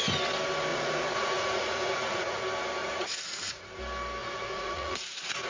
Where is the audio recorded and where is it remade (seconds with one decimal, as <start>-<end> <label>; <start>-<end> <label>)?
0.0-0.7 recorded; 0.7-2.4 remade; 2.4-2.8 recorded; 2.8-3.7 remade; 3.7-4.2 recorded; 4.2-5.5 remade